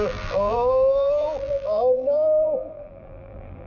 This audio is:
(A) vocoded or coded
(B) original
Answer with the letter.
A